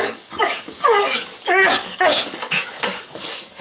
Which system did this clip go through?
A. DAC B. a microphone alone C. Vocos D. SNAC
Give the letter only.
A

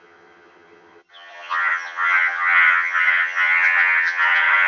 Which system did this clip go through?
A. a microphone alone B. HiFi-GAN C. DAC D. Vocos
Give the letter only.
B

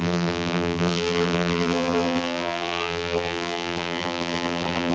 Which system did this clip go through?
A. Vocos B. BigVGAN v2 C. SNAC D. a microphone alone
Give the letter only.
B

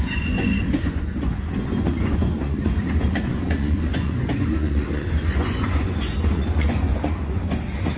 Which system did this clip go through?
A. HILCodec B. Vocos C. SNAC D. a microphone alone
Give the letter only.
B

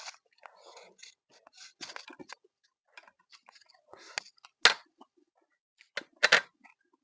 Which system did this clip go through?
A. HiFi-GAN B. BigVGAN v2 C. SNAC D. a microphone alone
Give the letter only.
D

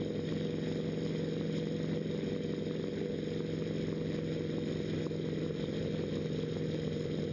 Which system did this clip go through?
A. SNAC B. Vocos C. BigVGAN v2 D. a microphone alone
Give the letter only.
D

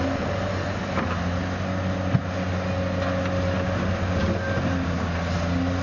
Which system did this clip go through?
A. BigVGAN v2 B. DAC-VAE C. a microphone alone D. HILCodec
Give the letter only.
C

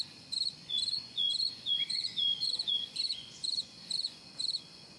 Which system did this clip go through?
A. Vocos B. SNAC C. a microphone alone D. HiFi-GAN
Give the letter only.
A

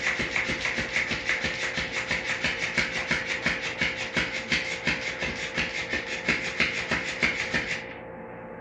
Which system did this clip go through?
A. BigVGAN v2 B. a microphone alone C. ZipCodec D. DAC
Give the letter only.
B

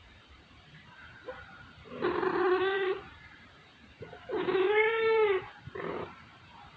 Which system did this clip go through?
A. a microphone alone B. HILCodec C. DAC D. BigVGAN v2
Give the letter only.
D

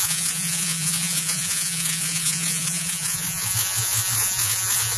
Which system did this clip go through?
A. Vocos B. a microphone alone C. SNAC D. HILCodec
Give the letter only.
A